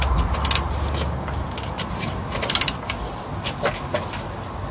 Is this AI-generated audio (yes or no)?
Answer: no